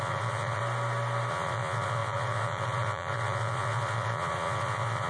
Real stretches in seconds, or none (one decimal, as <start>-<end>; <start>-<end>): 0.6-1.3